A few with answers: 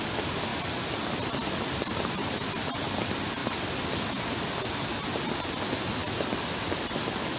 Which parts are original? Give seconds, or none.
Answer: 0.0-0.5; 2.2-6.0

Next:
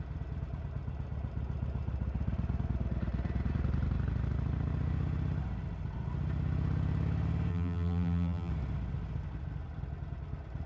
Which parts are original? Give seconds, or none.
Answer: 0.0-7.5; 8.5-10.7

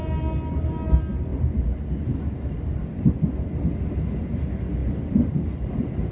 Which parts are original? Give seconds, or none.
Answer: 0.0-6.1

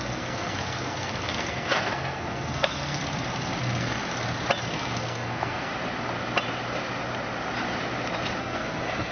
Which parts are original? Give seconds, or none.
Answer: 3.0-3.6; 4.0-4.6; 5.7-8.4

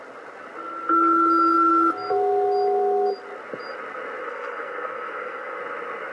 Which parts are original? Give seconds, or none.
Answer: 0.0-4.2; 5.6-6.1

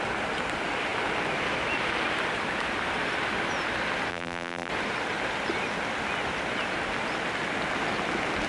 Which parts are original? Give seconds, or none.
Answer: 0.0-4.1; 4.7-8.5